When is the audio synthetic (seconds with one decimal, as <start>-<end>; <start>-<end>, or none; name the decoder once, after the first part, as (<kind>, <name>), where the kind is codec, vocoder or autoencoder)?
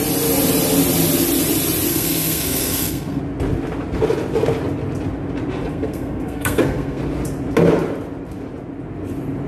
1.9-3.2 (codec, SNAC); 5.7-7.0